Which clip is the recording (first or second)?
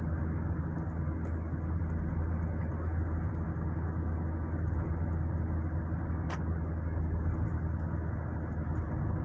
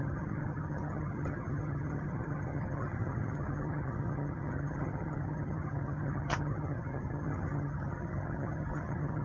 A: first